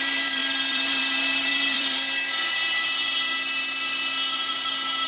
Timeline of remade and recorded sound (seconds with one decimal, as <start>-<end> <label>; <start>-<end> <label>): 0.0-2.6 remade; 2.6-5.1 recorded